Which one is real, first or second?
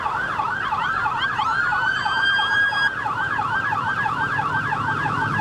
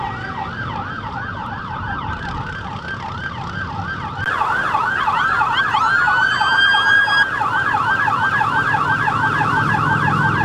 second